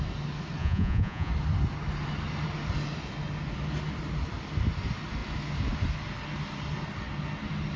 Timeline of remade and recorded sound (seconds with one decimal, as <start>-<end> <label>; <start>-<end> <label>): 0.0-0.6 recorded; 0.6-1.3 remade; 1.3-7.8 recorded